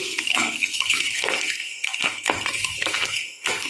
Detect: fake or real fake